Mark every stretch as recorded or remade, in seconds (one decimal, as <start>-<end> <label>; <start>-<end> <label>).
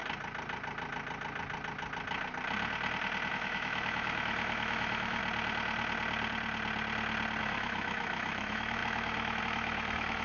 0.0-3.3 recorded; 3.3-5.2 remade; 5.2-7.4 recorded; 7.4-10.2 remade